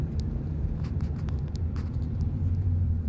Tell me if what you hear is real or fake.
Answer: fake